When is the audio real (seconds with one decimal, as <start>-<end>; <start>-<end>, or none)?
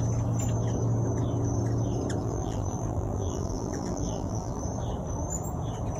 0.0-2.2; 4.6-6.0